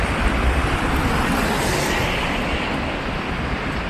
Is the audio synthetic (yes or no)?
no